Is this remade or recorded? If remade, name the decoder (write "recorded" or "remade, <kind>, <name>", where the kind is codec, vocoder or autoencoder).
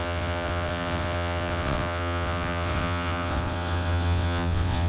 remade, vocoder, WaveNeXt